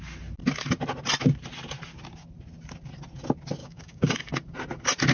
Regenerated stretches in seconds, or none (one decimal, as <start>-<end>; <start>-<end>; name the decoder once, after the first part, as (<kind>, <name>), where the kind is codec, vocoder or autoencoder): 3.6-4.3 (codec, DAC)